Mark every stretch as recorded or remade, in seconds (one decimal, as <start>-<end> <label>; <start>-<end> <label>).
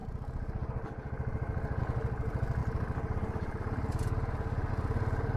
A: 0.0-5.4 recorded